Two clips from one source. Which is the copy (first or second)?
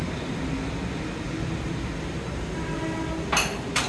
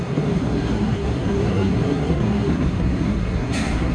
second